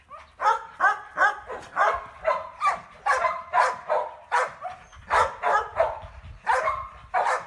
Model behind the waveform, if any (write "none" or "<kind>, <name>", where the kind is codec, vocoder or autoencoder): none